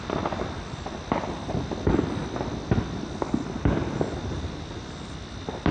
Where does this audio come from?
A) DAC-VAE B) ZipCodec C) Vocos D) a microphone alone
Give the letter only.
D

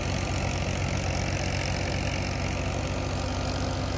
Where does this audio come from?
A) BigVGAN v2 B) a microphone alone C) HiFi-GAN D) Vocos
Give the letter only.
B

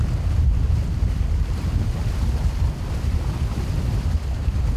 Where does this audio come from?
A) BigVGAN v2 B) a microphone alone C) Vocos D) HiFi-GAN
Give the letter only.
B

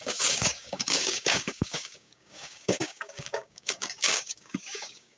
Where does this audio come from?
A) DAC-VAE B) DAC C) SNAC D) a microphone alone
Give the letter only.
B